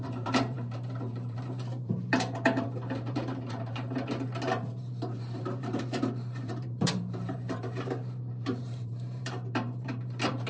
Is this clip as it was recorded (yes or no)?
no